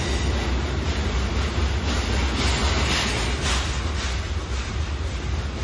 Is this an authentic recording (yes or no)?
yes